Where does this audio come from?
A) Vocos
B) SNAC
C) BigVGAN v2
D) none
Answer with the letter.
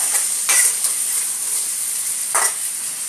D